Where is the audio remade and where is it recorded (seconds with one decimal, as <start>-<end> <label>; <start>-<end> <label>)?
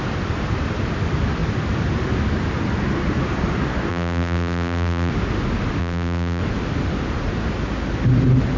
0.0-3.9 recorded; 3.9-5.1 remade; 5.1-5.8 recorded; 5.8-6.4 remade; 6.4-8.6 recorded